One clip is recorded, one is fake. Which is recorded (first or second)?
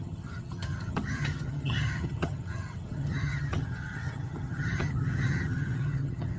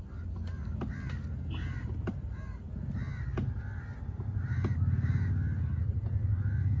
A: second